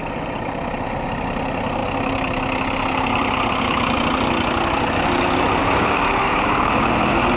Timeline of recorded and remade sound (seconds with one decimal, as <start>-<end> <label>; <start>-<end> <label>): 0.0-5.6 recorded; 5.6-6.7 remade; 6.7-7.4 recorded